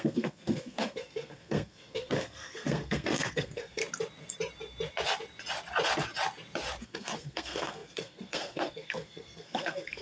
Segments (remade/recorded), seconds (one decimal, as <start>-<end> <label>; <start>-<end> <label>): 0.0-3.8 remade; 3.8-6.8 recorded; 6.8-10.0 remade